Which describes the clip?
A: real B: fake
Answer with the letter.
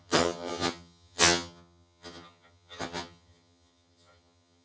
B